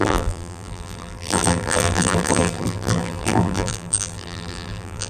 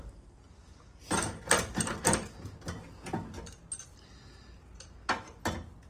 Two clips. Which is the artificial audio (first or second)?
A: first